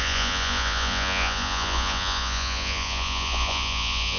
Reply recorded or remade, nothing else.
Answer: remade